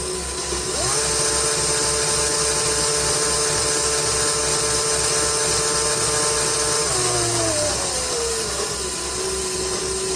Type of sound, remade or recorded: recorded